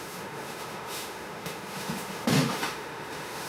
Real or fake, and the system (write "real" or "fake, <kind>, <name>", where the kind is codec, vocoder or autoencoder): fake, autoencoder, DAC-VAE